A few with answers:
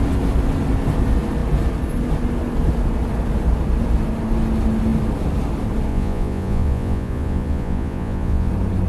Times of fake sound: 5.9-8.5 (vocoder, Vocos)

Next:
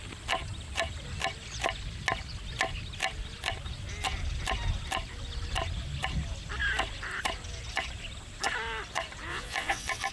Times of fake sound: 9.3-10.1 (vocoder, Vocos)